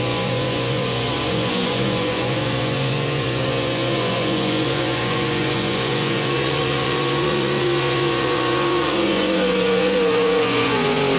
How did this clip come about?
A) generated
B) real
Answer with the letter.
A